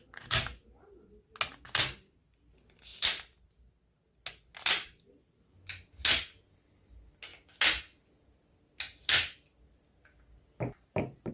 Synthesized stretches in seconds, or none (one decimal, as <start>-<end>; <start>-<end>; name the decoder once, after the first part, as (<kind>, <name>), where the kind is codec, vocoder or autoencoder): none